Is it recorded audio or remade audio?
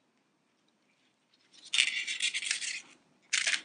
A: recorded